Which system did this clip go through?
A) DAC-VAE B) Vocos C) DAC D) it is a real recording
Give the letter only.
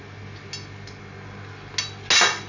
D